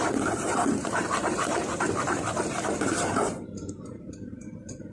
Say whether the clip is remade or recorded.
remade